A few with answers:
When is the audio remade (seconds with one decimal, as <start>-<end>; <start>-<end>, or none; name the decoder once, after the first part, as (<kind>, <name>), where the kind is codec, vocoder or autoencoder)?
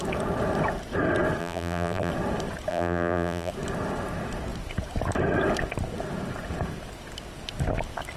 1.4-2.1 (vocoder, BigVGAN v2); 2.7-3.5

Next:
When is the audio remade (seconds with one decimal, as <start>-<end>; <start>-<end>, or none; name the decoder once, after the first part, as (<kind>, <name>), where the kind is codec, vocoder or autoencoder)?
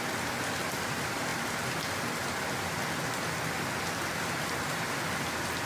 none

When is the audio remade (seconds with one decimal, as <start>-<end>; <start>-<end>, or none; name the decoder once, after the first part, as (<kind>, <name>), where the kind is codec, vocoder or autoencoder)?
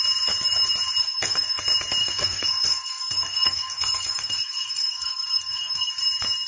1.0-1.6 (codec, SNAC); 2.0-5.9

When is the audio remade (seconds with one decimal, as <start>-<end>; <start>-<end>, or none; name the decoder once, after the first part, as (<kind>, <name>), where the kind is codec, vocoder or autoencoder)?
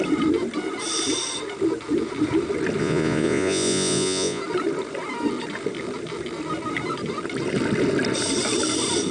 2.8-4.4 (vocoder, Vocos)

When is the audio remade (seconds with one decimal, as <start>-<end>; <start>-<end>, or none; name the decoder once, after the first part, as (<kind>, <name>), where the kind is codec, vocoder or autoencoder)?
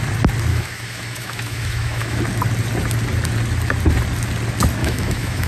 0.5-2.2 (autoencoder, DAC-VAE); 4.8-5.5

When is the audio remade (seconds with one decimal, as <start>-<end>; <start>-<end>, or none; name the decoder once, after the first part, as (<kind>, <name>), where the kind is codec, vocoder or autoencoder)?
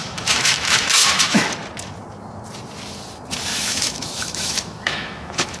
0.0-1.5 (autoencoder, DAC-VAE); 3.5-5.6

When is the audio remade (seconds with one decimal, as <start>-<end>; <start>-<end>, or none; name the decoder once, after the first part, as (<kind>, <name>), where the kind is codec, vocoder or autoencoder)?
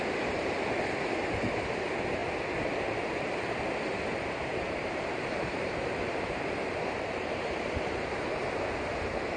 4.4-8.4 (vocoder, BigVGAN v2)